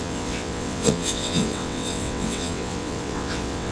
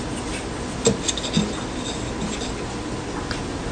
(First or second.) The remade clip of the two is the first